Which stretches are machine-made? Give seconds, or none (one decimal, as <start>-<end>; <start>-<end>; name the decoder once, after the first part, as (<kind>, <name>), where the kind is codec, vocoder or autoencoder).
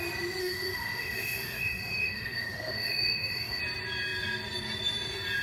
0.4-3.6 (autoencoder, DAC-VAE)